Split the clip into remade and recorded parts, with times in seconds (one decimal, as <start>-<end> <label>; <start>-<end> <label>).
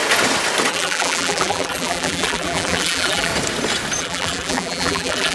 0.0-0.7 recorded; 0.7-3.3 remade; 3.3-4.0 recorded; 4.0-5.3 remade